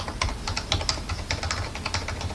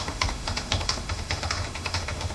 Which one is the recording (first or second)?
first